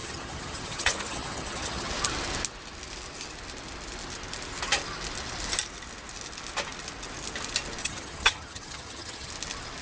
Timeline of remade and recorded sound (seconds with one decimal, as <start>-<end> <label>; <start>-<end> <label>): 0.0-1.9 remade; 1.9-7.8 recorded; 7.8-9.3 remade; 9.3-9.8 recorded